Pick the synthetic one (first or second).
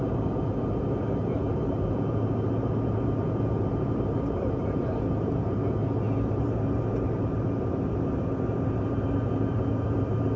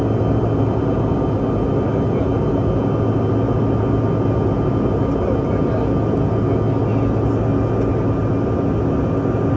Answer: first